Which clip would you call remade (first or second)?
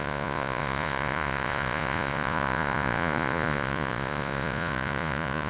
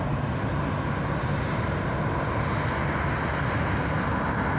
first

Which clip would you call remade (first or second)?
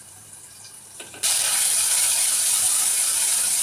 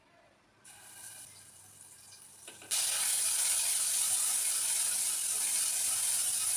first